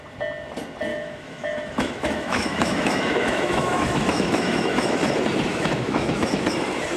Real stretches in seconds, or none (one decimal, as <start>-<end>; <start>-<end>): 0.0-0.9; 5.1-5.5; 6.4-7.0